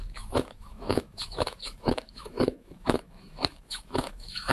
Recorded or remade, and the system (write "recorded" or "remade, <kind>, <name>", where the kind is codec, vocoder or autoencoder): remade, autoencoder, DAC-VAE